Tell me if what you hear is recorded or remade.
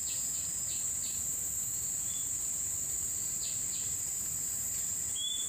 remade